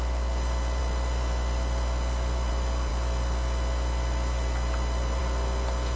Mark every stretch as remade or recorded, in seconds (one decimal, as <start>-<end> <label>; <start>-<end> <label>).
0.0-6.0 recorded